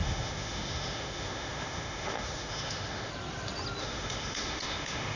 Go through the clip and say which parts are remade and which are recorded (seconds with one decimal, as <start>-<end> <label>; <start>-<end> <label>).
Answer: 0.0-3.1 remade; 3.1-3.8 recorded; 3.8-5.2 remade